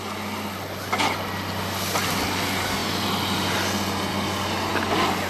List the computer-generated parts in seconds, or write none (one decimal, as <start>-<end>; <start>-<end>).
none